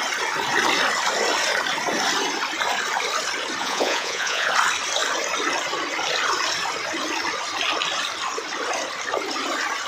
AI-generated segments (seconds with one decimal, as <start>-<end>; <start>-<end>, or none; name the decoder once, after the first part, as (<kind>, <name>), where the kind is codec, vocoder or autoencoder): 3.6-4.5 (vocoder, Vocos)